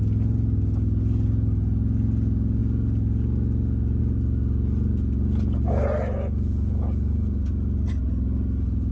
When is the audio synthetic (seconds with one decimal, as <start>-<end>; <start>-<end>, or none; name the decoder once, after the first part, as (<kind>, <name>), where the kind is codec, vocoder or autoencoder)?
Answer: none